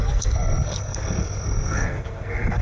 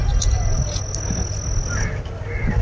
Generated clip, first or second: first